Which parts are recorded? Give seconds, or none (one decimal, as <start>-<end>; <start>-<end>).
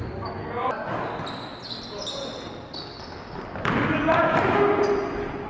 0.0-5.5